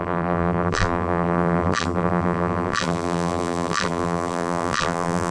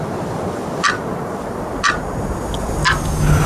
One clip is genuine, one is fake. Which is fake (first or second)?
first